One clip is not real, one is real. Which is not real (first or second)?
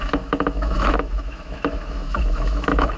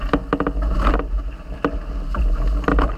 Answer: first